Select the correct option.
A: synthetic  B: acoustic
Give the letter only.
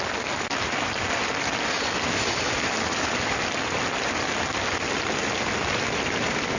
B